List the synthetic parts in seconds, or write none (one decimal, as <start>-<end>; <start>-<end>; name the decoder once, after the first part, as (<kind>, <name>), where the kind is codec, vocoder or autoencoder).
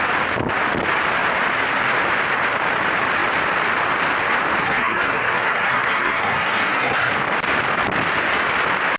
4.6-7.1 (codec, SNAC)